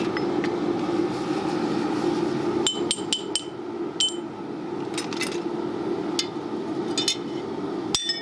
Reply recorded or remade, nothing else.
recorded